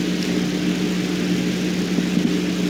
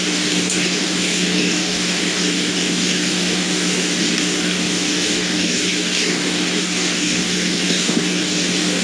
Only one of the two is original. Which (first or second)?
first